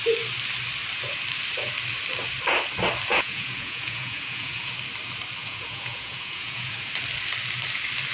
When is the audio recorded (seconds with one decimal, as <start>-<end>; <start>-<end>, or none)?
0.0-3.1; 4.7-5.4; 6.9-8.1